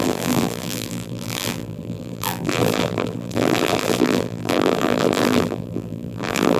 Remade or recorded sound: remade